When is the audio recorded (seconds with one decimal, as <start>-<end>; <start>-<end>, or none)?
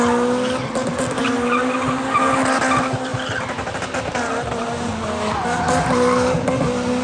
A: 0.0-7.0